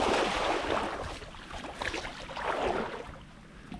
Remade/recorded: recorded